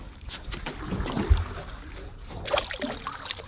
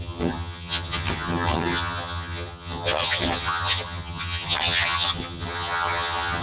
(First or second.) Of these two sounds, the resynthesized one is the second